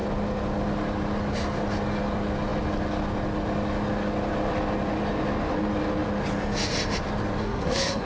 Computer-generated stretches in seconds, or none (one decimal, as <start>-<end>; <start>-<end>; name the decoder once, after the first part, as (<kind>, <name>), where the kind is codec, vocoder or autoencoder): 7.4-8.1 (codec, SNAC)